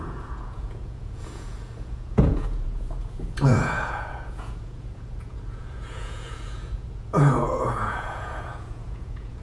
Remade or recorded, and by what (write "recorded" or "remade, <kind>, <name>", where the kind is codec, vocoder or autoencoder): remade, vocoder, Vocos